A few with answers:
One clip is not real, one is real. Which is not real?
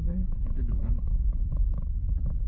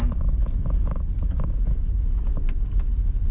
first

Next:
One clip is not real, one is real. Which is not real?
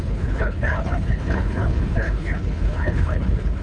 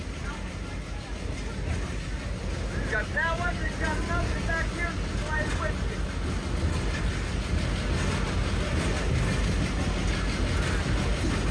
first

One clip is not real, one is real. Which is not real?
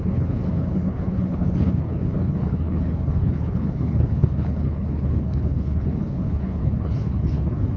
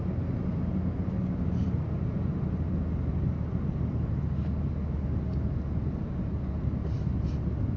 first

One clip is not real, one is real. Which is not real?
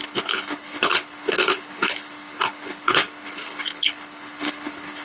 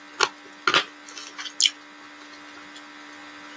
first